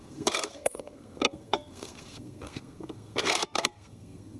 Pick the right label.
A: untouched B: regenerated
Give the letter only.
B